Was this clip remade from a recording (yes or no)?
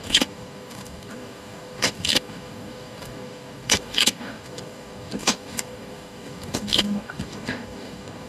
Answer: yes